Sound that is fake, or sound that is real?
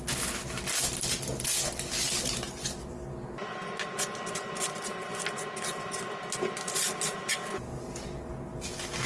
real